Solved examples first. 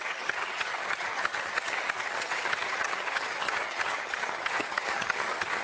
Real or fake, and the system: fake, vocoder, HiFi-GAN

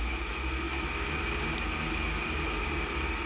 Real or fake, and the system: real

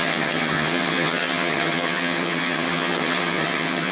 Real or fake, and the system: fake, vocoder, HiFi-GAN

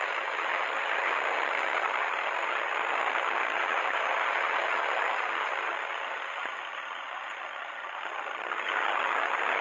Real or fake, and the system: fake, vocoder, HiFi-GAN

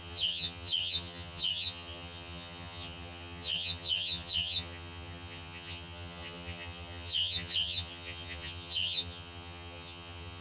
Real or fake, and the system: fake, vocoder, HiFi-GAN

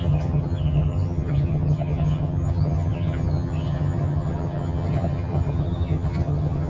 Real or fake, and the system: fake, vocoder, HiFi-GAN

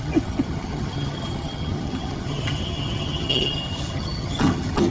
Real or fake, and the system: fake, vocoder, HiFi-GAN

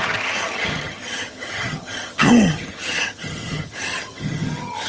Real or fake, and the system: fake, vocoder, HiFi-GAN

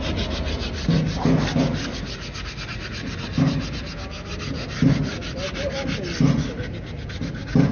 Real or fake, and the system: real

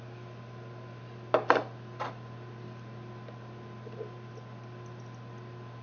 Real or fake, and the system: real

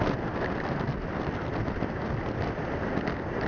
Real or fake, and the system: real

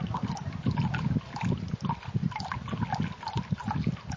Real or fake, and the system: real